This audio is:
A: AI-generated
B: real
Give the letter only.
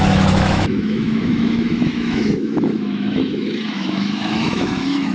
A